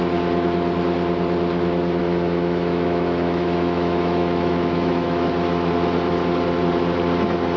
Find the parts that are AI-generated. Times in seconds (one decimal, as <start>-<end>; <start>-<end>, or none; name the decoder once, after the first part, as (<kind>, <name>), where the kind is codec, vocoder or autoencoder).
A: 2.0-5.3 (autoencoder, DAC-VAE)